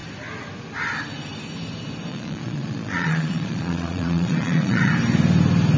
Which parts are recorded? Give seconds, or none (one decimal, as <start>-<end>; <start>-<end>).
0.0-2.1; 4.9-5.8